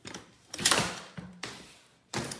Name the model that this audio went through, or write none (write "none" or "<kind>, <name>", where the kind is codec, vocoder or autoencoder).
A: vocoder, BigVGAN v2